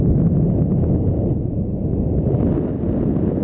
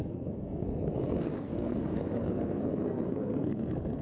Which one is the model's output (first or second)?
second